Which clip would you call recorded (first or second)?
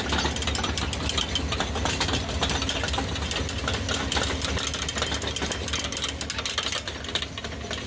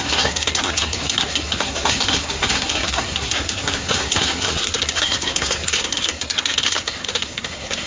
first